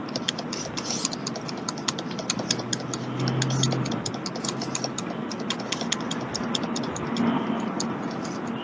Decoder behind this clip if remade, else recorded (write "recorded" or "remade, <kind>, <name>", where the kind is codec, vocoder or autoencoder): recorded